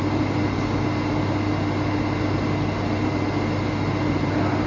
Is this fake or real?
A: real